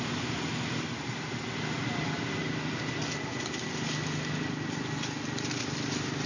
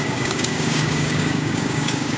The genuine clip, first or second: first